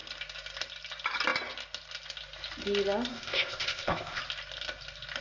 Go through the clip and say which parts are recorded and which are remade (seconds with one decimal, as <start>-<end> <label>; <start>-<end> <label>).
0.0-3.1 recorded; 3.1-4.2 remade; 4.2-5.2 recorded